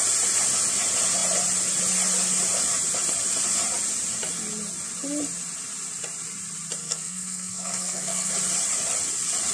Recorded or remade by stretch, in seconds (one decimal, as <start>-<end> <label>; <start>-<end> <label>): 0.0-6.8 recorded; 6.8-8.3 remade; 8.3-9.5 recorded